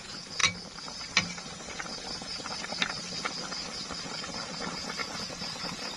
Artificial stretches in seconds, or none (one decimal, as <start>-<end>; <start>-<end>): 0.0-0.4; 4.0-6.0